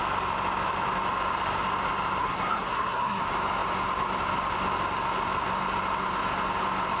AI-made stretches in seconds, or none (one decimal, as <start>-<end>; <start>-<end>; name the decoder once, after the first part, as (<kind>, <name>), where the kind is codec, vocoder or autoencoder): 2.2-3.2 (codec, SNAC)